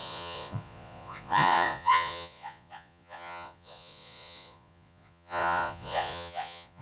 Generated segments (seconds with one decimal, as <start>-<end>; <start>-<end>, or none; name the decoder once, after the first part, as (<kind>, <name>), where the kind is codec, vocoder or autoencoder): 0.0-6.8 (vocoder, Vocos)